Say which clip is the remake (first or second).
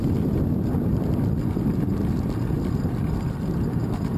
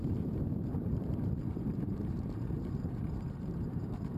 second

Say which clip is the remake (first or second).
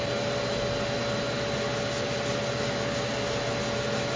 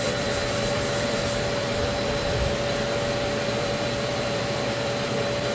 second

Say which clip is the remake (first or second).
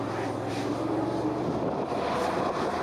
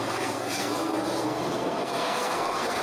second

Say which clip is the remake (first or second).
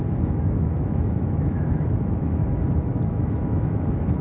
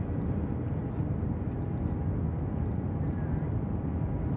first